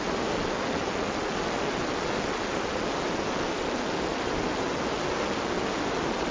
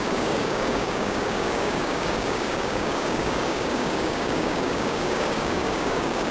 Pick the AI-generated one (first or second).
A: second